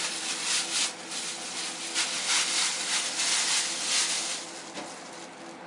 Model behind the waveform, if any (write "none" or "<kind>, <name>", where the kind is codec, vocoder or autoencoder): none